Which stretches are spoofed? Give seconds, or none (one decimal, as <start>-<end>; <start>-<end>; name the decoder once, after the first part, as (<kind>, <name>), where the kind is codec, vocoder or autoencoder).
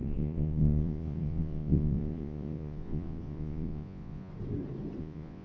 0.0-4.3 (vocoder, Vocos); 5.0-5.4